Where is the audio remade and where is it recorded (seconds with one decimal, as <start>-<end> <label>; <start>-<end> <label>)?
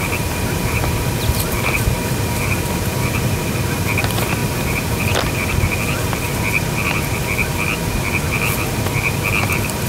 0.0-4.4 recorded; 4.4-5.5 remade; 5.5-9.9 recorded